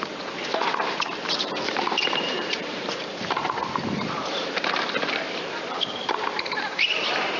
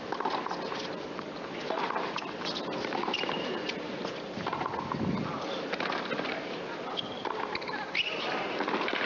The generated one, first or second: first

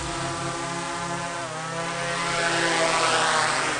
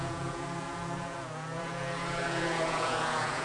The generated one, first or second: second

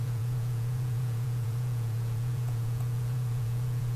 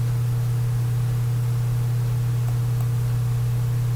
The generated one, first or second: first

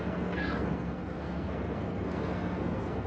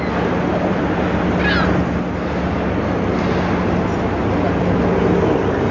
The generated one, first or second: first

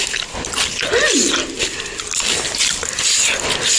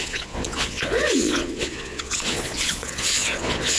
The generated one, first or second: second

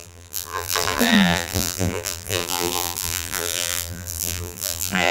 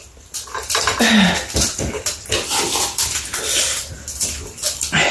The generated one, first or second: first